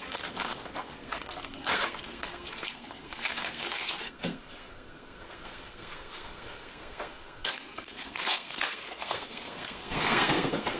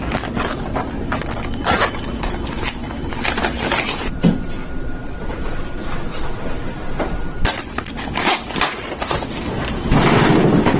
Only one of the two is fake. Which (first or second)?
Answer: first